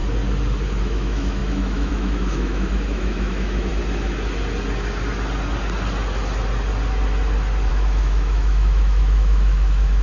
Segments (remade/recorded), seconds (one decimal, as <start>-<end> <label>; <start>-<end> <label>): 0.0-0.8 recorded; 0.8-3.7 remade; 3.7-7.7 recorded; 7.7-10.0 remade